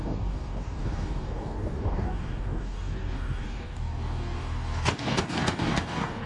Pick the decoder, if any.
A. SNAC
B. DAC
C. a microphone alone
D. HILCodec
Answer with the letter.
B